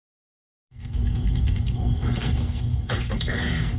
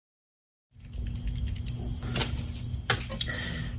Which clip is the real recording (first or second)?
second